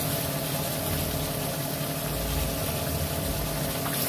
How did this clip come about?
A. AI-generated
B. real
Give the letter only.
B